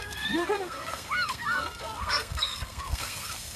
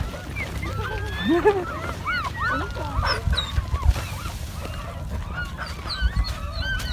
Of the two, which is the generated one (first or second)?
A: first